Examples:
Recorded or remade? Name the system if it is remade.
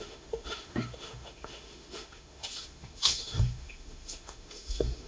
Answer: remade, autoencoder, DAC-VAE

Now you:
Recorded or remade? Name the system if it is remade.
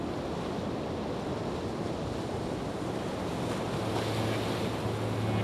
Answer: recorded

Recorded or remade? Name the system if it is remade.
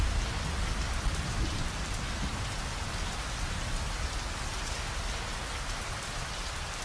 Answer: recorded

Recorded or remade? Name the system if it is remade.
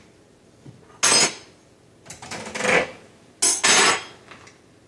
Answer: recorded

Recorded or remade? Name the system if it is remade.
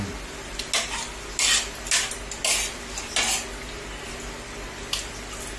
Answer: recorded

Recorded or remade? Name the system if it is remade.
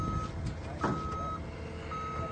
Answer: recorded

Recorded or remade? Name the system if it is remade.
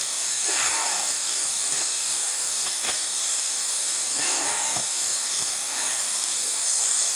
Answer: remade, codec, DAC